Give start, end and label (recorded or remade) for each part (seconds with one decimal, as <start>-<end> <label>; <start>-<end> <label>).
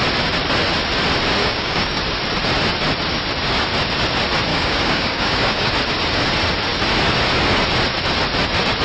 0.0-1.4 recorded; 1.4-2.0 remade; 2.0-4.5 recorded; 4.5-5.7 remade; 5.7-8.8 recorded